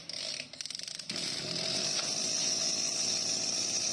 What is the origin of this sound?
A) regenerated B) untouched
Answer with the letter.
B